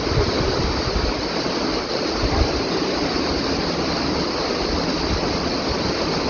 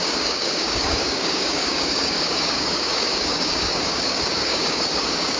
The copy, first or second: second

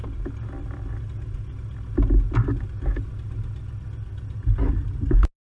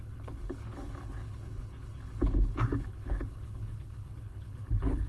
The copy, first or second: second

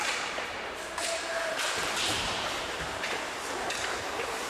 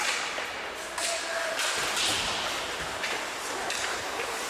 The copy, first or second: first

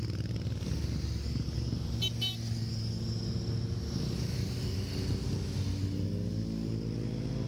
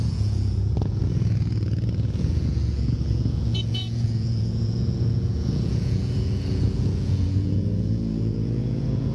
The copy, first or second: second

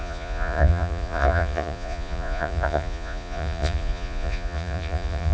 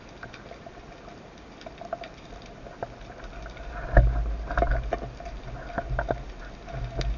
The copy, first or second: first